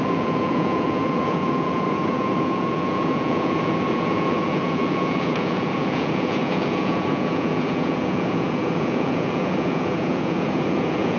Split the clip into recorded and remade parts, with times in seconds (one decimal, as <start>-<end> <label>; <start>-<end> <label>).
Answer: 0.0-11.2 remade